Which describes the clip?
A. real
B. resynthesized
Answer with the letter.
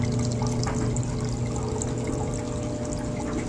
A